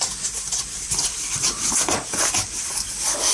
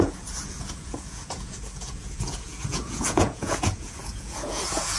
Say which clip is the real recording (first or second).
first